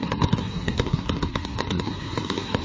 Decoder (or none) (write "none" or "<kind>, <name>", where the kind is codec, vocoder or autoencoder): codec, SNAC